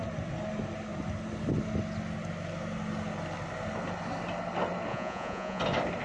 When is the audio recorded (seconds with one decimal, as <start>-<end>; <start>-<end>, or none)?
0.0-4.9; 5.6-6.0